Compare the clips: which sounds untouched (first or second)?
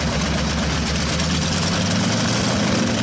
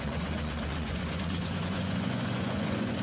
first